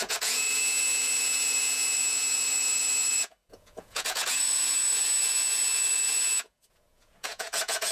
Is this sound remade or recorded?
remade